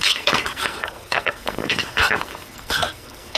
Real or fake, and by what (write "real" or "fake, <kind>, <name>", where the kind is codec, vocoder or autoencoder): fake, codec, SNAC